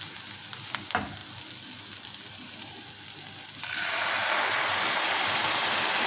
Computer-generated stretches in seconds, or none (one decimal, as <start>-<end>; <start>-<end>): none